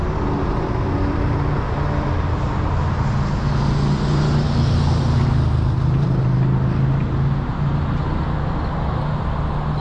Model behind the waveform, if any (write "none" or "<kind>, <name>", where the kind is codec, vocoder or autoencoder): none